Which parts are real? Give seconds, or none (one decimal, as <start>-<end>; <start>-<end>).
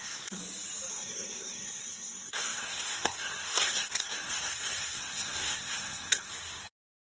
0.4-0.9